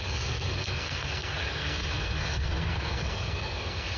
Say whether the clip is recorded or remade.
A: remade